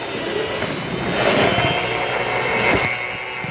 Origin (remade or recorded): recorded